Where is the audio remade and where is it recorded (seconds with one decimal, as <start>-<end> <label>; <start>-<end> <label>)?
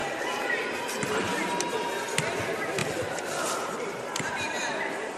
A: 0.0-0.6 remade; 0.6-2.8 recorded; 2.8-5.2 remade